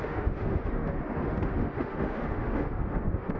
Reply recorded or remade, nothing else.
remade